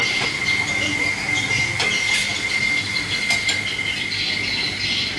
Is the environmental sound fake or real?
real